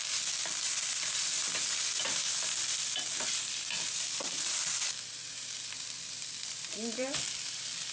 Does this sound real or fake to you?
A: fake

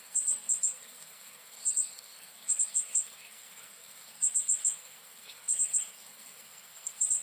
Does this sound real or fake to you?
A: fake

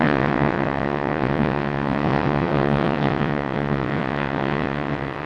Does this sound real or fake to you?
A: fake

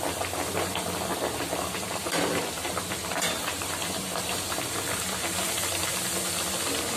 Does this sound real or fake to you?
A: real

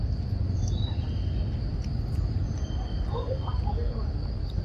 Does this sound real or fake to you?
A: real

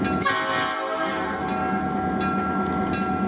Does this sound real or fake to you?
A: real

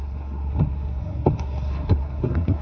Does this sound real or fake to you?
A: fake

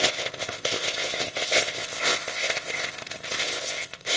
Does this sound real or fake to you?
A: fake